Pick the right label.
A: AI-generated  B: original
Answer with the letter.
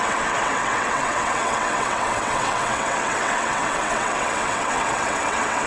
A